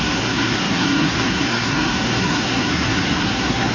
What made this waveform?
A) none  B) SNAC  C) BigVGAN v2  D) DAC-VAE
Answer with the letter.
B